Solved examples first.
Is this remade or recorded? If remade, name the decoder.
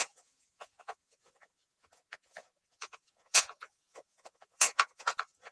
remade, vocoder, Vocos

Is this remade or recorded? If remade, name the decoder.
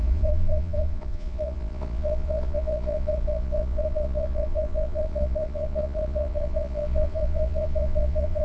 remade, vocoder, Vocos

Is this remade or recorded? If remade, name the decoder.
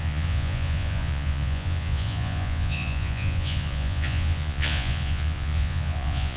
remade, vocoder, Vocos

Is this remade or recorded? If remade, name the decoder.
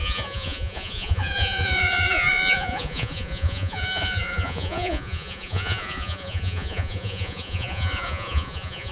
remade, vocoder, Vocos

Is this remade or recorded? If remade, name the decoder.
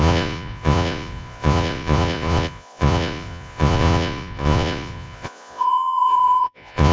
remade, vocoder, Vocos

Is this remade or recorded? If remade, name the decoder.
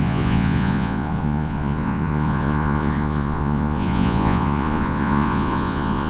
remade, vocoder, Vocos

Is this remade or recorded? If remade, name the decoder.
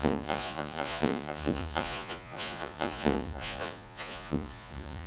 remade, vocoder, Vocos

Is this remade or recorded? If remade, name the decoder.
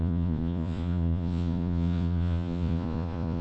remade, vocoder, Vocos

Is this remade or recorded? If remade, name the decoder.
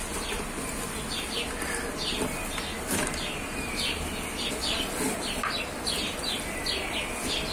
recorded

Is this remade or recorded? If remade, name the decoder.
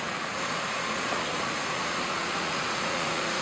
remade, vocoder, Vocos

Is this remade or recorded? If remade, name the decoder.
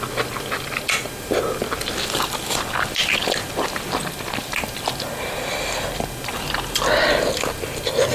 recorded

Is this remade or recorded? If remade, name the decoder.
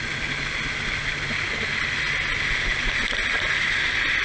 recorded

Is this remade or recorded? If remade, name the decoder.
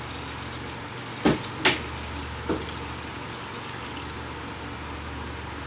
recorded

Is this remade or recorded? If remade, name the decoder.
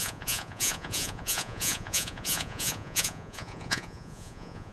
remade, vocoder, Vocos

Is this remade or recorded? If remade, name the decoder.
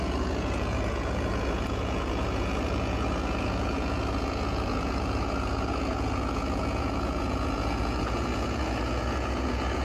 remade, vocoder, Vocos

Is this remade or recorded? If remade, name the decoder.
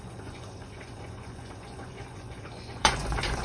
remade, vocoder, Vocos